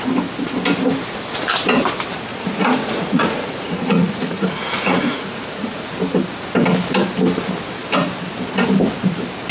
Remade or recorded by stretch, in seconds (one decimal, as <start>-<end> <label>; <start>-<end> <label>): 0.0-2.3 recorded; 2.3-5.9 remade; 5.9-9.5 recorded